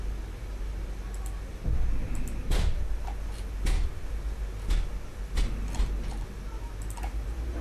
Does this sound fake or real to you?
real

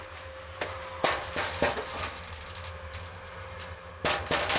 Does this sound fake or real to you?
real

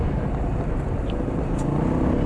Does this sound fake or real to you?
real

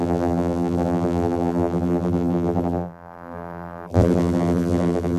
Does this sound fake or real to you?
fake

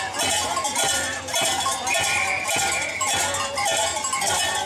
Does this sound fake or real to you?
fake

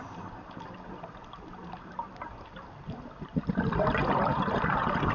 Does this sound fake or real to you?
fake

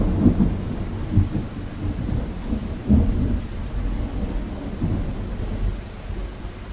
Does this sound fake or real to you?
real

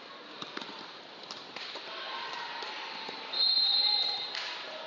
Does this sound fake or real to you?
fake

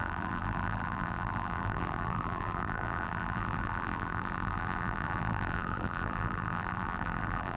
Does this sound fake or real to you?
fake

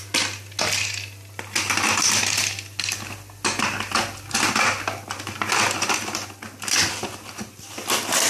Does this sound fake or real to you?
real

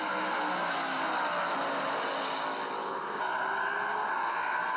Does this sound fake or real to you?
real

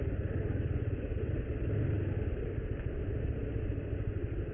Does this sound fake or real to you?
real